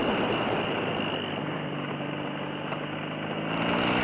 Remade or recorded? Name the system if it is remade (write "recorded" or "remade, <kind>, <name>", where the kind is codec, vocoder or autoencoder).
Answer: recorded